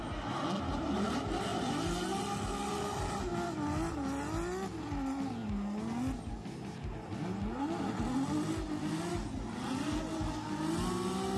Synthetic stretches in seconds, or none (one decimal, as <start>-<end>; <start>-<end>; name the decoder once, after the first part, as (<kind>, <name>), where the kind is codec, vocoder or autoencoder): none